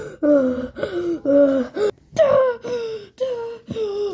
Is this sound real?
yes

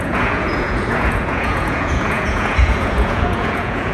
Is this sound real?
no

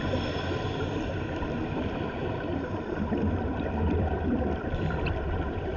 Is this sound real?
no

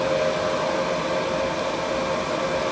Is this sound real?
yes